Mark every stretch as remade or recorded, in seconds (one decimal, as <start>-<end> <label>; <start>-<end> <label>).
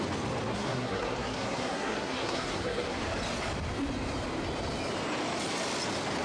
0.0-0.5 recorded; 0.5-3.0 remade; 3.0-6.2 recorded